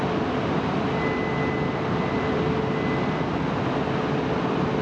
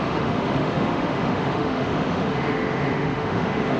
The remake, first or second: second